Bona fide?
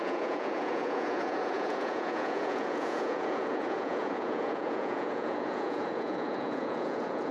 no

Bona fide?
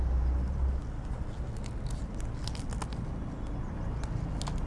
yes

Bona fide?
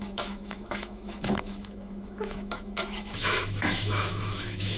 no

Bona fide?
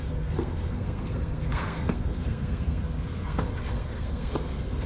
no